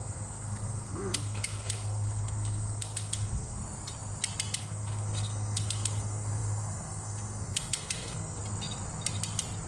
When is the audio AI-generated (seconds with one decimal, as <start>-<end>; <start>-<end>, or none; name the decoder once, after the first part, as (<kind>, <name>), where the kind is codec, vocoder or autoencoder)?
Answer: 0.0-3.6 (codec, SNAC); 4.6-8.4